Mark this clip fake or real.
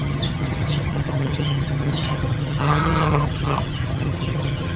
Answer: fake